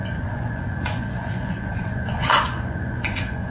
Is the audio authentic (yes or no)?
no